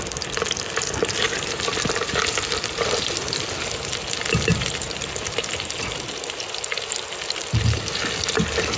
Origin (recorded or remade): recorded